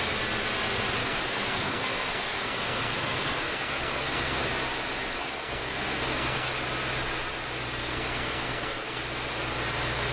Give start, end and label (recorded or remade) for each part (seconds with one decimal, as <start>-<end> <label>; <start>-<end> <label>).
0.0-1.0 recorded; 1.0-4.4 remade; 4.4-5.2 recorded; 5.2-6.5 remade; 6.5-7.8 recorded; 7.8-9.0 remade; 9.0-10.1 recorded